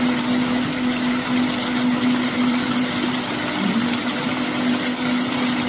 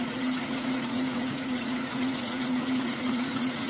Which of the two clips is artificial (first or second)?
second